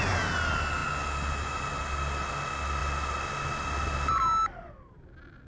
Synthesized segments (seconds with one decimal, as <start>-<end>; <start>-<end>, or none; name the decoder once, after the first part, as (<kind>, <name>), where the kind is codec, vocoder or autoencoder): none